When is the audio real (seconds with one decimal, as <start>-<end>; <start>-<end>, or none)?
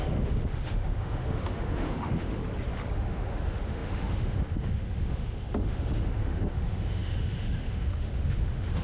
2.4-2.9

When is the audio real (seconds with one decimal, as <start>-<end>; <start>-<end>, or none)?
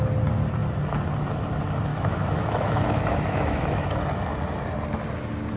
0.0-1.9; 4.0-5.6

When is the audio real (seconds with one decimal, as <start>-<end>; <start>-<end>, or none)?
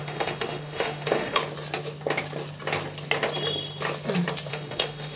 1.4-4.5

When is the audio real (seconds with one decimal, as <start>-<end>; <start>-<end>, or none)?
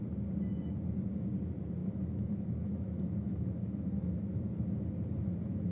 0.0-1.8; 4.4-5.7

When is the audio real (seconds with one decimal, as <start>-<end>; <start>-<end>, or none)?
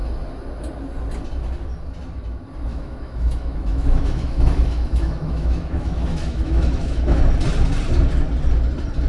0.0-2.7; 7.2-9.1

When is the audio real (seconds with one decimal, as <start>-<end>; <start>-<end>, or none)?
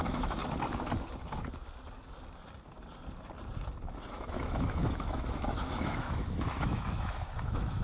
0.4-4.1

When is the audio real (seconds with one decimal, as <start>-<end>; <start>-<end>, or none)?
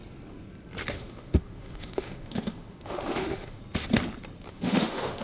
0.0-0.9; 3.6-4.5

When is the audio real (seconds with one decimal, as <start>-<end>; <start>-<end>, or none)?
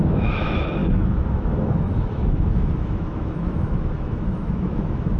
none